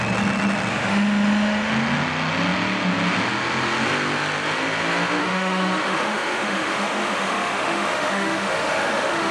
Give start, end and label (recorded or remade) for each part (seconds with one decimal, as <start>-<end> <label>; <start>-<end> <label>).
0.0-0.7 recorded; 0.7-1.7 remade; 1.7-5.2 recorded; 5.2-9.3 remade